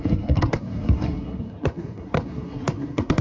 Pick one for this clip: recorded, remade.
remade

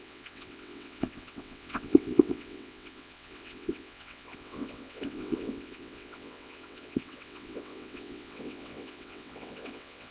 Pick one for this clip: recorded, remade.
remade